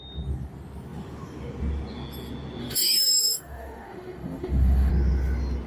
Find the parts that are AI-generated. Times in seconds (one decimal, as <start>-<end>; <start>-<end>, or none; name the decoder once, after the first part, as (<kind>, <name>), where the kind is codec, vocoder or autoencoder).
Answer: 2.6-4.9 (autoencoder, DAC-VAE)